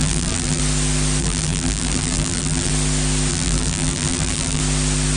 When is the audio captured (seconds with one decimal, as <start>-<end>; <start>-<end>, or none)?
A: 0.6-1.2; 2.7-3.3; 4.6-5.2